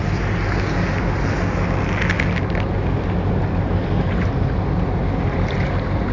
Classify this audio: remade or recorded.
recorded